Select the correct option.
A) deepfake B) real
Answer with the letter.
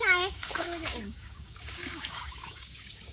A